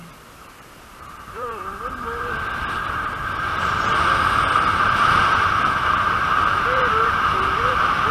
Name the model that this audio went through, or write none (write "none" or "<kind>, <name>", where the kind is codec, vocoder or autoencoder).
vocoder, BigVGAN v2